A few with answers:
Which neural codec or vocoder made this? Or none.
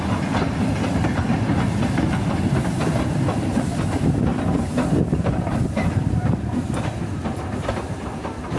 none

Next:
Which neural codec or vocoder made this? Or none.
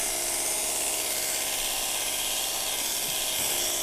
none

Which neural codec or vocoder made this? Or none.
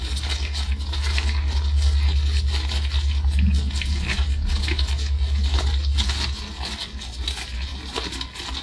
none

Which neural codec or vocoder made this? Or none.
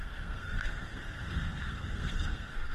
codec, SNAC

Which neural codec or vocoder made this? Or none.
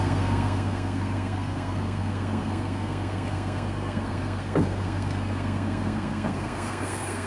codec, SNAC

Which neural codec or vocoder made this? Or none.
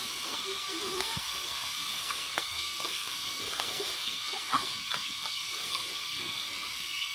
codec, SNAC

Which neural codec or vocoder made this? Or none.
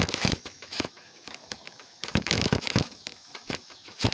autoencoder, DAC-VAE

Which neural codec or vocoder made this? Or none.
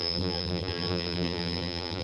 vocoder, BigVGAN v2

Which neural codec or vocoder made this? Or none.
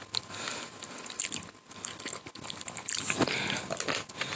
none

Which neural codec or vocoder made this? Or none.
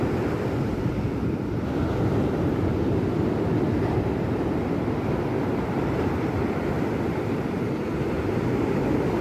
none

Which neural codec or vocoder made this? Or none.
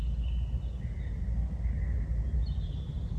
none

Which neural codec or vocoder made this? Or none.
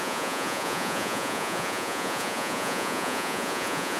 vocoder, Vocos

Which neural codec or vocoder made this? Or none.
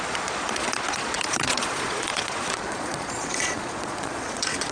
vocoder, Vocos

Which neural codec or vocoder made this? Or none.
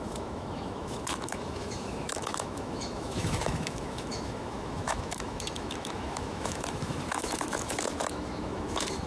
autoencoder, DAC-VAE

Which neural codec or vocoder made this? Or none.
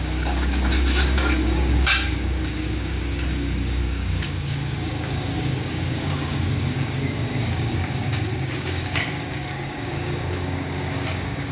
codec, DAC